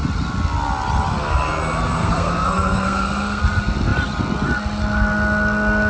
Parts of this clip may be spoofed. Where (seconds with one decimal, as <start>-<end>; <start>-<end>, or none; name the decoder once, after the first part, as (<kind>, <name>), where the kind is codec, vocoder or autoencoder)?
2.0-3.4 (codec, SNAC)